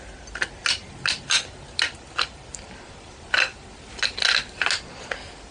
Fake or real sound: real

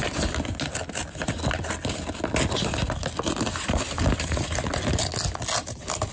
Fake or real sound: real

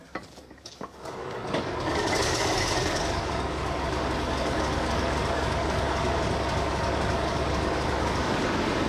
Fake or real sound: fake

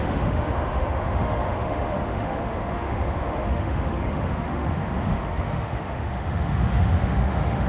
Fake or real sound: fake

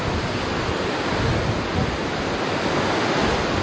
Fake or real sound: real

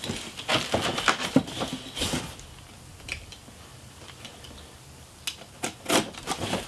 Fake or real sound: real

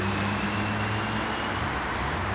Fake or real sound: real